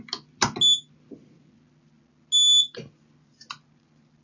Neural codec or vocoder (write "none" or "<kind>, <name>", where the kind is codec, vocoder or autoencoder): none